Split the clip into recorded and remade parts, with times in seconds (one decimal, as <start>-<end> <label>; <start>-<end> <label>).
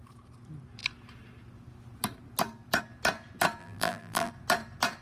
0.0-3.6 recorded; 3.6-4.3 remade; 4.3-5.0 recorded